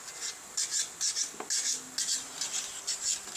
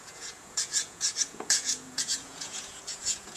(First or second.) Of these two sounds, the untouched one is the first